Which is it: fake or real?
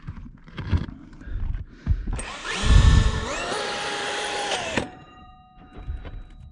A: fake